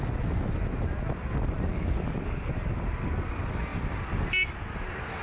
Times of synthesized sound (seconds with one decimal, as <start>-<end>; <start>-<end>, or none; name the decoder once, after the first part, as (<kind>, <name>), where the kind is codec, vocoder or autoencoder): 1.7-2.4 (codec, DAC)